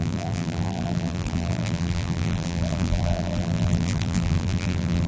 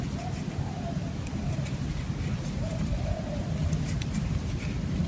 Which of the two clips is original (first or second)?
second